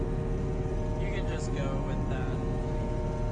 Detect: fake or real real